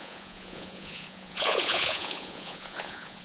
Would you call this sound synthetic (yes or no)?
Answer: yes